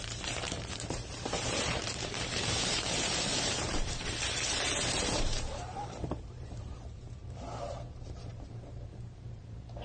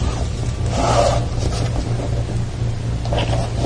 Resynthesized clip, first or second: first